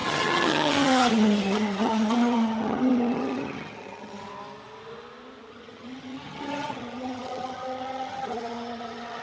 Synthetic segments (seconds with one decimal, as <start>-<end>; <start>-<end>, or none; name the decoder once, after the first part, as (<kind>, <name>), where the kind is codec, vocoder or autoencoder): 0.0-4.3 (vocoder, HiFi-GAN); 5.5-9.2